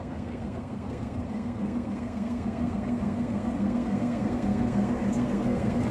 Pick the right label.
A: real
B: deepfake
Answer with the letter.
B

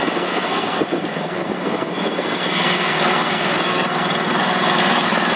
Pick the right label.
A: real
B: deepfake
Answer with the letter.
B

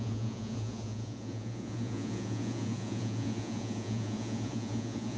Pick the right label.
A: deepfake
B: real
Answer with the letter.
A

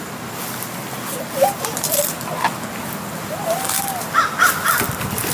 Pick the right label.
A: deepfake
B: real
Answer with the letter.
B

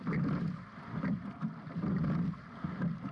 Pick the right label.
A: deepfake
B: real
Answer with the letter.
B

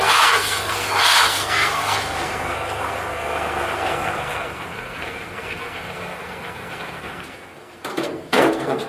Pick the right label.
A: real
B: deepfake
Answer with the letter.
B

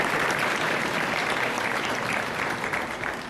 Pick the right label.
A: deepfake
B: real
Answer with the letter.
A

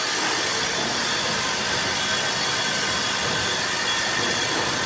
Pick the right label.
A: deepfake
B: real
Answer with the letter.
B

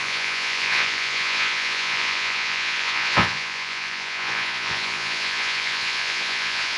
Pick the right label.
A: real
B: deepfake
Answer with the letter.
B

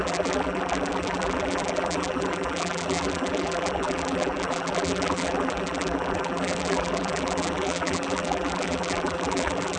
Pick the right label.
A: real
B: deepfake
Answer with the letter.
B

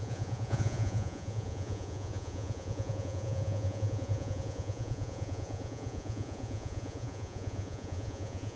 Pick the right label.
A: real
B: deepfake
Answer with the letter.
B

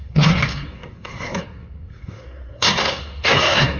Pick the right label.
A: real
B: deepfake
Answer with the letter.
B